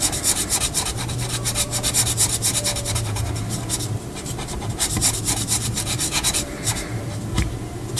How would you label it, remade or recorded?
remade